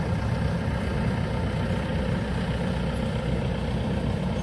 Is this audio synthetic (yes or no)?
no